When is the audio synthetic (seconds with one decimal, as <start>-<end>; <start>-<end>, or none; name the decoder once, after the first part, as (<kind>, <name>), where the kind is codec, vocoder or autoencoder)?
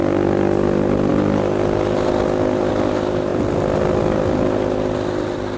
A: none